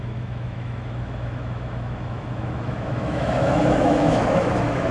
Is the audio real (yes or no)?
no